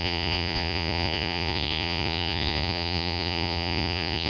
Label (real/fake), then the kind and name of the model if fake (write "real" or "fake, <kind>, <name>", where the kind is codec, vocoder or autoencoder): fake, vocoder, Vocos